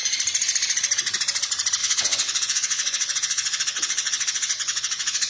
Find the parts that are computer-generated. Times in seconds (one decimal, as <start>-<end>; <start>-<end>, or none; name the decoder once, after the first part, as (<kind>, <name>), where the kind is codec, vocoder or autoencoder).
1.8-5.3 (vocoder, WaveNeXt)